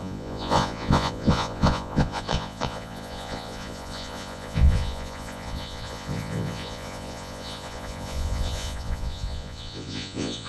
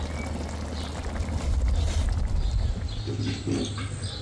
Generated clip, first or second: first